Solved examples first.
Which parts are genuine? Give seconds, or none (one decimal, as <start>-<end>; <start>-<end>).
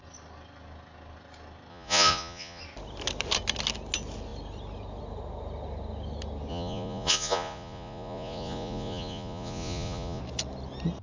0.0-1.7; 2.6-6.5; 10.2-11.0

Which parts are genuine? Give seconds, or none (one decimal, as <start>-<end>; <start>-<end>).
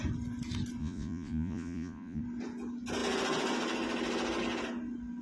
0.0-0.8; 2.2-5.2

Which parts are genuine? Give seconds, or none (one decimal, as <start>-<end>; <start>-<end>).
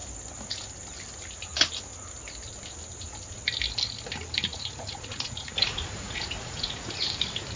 0.0-4.5; 7.0-7.6